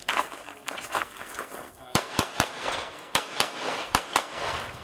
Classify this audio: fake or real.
fake